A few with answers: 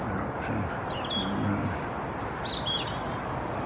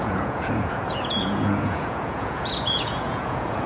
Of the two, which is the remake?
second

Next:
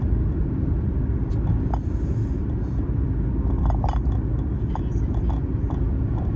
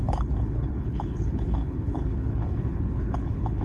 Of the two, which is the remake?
second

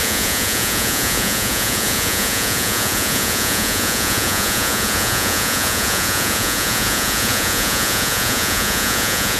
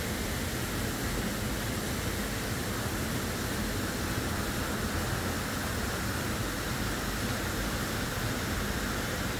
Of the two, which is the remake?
first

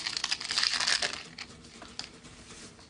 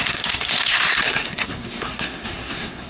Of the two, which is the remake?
second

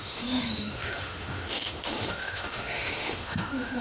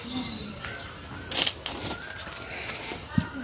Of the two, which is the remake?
first